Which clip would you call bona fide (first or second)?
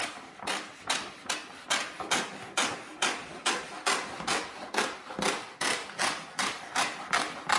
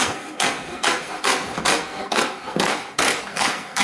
first